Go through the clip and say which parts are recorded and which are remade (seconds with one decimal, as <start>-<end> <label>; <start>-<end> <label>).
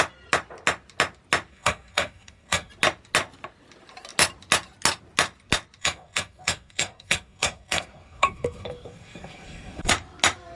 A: 0.0-1.5 recorded; 1.5-2.7 remade; 2.7-5.8 recorded; 5.8-9.9 remade; 9.9-10.6 recorded